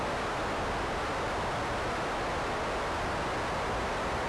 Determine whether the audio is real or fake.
real